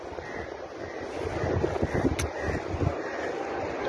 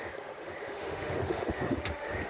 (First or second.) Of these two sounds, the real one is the first